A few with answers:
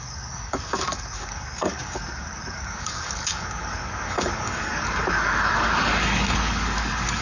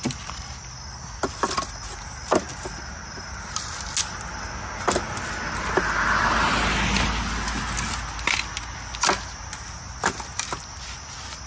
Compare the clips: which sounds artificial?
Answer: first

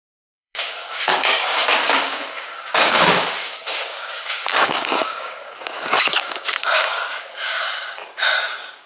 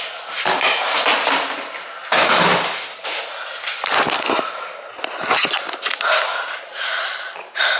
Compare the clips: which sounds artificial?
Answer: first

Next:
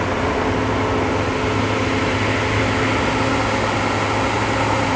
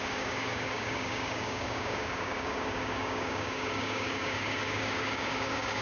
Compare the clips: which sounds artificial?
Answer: second